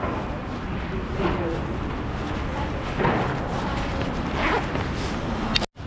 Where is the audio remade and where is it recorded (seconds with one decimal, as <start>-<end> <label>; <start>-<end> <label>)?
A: 0.0-5.9 recorded